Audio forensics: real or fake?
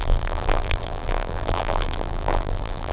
fake